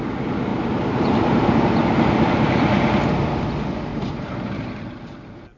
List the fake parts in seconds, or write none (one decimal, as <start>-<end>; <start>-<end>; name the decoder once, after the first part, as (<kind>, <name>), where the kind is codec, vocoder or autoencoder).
0.5-3.4 (vocoder, BigVGAN v2); 3.9-4.8